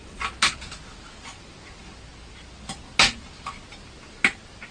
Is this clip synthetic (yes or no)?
no